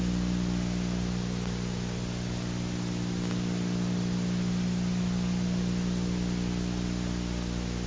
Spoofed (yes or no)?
no